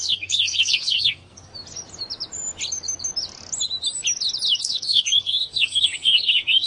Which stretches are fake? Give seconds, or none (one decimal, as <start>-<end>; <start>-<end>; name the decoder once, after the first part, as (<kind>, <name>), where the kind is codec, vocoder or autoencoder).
0.0-1.5 (codec, SNAC); 4.6-6.7